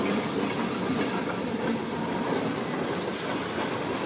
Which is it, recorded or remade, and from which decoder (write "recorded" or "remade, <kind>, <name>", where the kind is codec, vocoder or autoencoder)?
recorded